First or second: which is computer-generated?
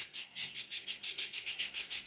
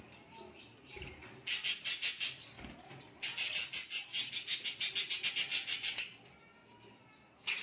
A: first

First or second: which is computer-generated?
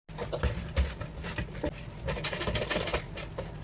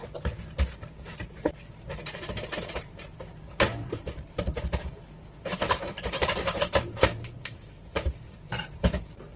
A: second